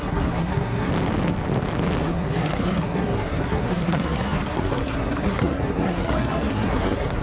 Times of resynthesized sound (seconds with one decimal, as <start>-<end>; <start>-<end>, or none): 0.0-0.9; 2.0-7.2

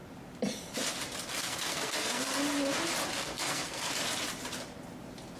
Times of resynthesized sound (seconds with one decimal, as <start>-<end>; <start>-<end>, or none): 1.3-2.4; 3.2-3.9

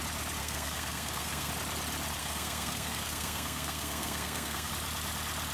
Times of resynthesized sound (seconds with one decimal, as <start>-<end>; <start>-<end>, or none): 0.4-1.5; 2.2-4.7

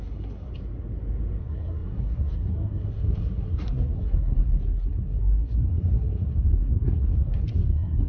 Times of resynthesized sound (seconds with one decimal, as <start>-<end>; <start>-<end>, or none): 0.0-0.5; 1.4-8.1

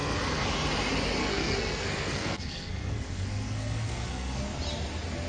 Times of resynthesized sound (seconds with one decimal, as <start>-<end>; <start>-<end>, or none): 0.0-0.5; 1.2-4.4